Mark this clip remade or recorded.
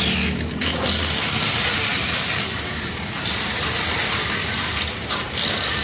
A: recorded